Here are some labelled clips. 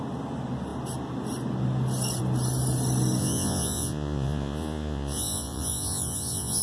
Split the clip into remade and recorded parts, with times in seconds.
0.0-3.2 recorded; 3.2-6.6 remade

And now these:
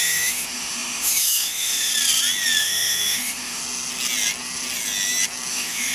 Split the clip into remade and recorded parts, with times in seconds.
0.0-1.9 remade; 1.9-2.6 recorded; 2.6-3.6 remade; 3.6-5.5 recorded; 5.5-5.9 remade

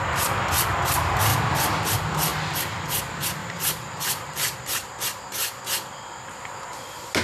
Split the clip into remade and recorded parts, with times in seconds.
0.0-1.3 recorded; 1.3-1.8 remade; 1.8-2.3 recorded; 2.3-3.0 remade; 3.0-3.4 recorded; 3.4-4.6 remade; 4.6-7.2 recorded

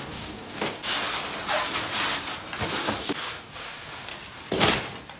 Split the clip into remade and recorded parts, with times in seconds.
0.0-0.8 remade; 0.8-3.0 recorded; 3.0-4.1 remade; 4.1-5.2 recorded

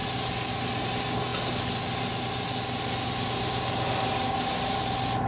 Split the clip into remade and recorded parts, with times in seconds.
0.0-5.3 recorded